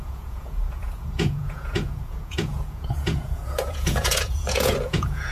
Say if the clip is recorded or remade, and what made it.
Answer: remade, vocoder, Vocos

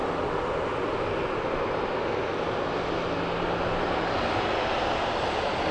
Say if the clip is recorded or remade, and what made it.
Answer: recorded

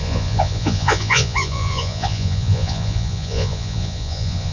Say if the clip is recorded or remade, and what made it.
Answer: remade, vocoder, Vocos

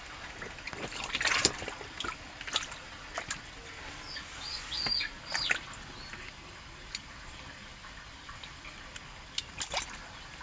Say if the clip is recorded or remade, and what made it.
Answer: recorded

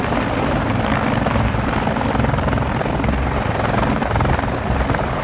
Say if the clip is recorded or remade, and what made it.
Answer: recorded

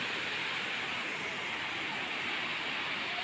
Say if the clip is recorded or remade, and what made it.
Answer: recorded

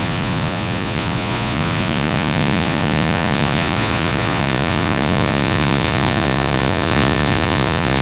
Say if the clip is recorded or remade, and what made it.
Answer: remade, vocoder, Vocos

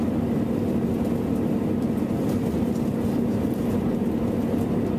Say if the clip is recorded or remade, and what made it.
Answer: recorded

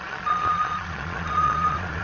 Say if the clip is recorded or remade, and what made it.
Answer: remade, vocoder, Vocos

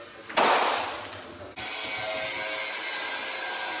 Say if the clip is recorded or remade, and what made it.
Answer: recorded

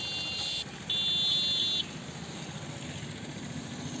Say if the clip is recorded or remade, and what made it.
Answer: recorded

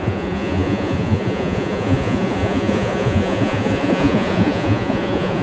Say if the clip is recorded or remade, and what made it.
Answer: remade, vocoder, Vocos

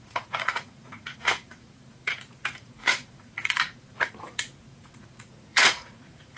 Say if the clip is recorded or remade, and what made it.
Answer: remade, vocoder, Vocos